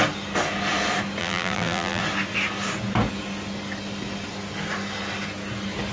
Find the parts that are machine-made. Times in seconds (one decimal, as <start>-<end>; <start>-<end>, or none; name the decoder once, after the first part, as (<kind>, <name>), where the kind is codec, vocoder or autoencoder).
1.2-2.0 (vocoder, BigVGAN v2)